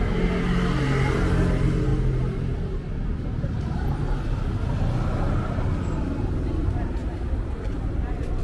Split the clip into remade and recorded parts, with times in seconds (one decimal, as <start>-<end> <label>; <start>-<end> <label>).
0.0-8.4 recorded